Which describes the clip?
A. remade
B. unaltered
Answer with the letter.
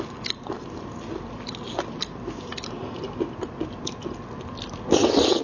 B